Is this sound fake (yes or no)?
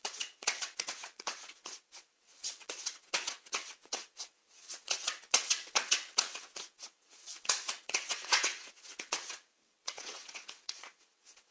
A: yes